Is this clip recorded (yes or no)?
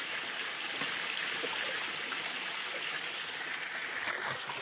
yes